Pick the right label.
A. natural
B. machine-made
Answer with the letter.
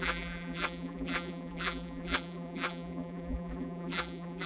B